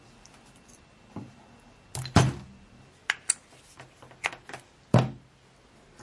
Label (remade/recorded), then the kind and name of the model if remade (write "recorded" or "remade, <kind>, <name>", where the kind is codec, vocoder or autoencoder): recorded